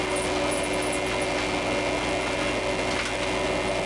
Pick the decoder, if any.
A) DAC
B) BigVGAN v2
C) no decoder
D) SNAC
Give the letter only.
C